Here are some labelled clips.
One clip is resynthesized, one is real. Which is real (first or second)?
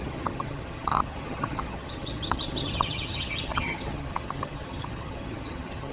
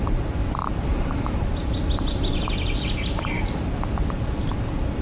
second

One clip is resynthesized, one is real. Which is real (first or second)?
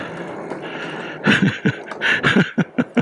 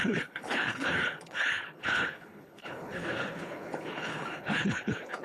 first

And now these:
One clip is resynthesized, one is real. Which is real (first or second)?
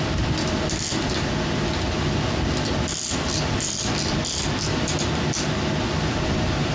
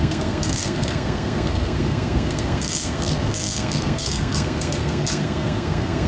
first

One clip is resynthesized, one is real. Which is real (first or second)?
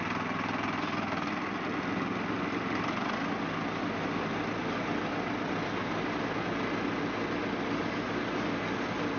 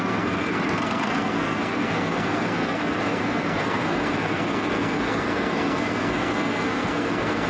first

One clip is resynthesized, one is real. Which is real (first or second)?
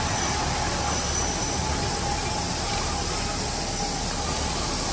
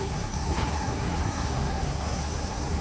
first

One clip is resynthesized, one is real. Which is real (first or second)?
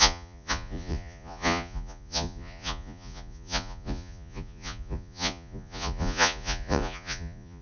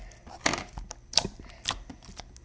second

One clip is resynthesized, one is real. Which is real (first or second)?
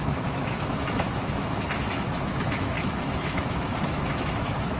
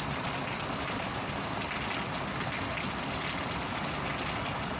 second